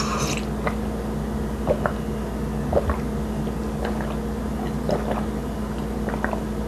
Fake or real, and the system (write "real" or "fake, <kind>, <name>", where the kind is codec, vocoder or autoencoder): real